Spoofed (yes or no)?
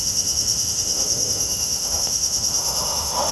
yes